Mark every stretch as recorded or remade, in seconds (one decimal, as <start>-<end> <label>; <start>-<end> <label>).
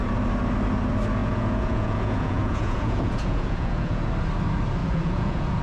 0.0-1.2 recorded; 1.2-4.1 remade; 4.1-4.8 recorded; 4.8-5.6 remade